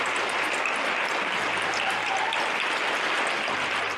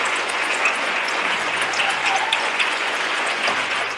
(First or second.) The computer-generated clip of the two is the second